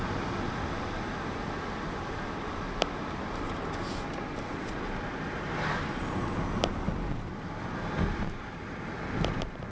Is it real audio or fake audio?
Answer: real